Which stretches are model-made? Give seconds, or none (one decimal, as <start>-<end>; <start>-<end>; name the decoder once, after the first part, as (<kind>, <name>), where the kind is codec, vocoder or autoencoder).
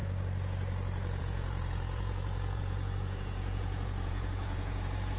1.2-5.2 (vocoder, Vocos)